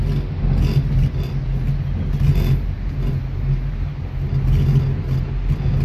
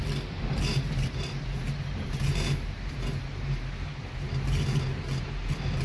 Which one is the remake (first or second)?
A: second